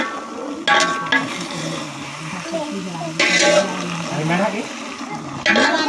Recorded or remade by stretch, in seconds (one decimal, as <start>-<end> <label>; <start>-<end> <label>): 0.0-5.9 recorded